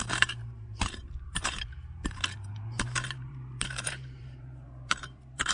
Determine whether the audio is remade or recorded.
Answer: remade